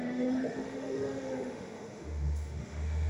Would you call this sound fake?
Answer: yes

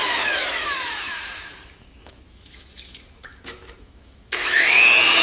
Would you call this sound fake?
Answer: yes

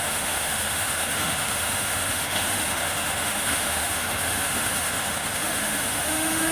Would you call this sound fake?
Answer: yes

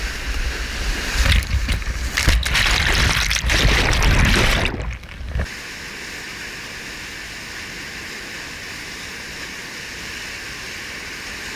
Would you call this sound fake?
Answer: no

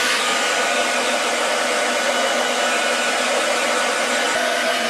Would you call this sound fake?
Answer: no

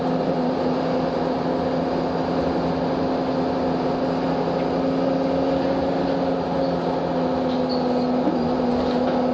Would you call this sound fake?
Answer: no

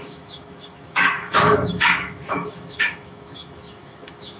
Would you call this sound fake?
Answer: yes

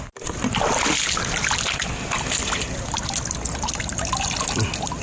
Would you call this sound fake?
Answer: no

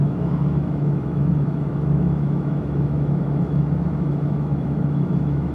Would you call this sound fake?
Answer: yes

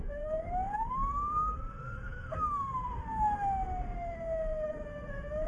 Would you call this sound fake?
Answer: yes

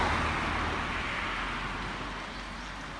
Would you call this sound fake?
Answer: no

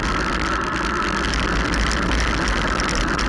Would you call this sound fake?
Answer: no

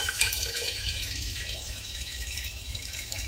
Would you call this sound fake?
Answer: yes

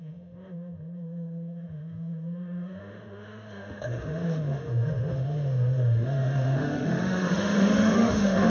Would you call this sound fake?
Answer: yes